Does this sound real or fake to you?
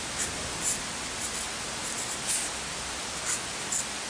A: real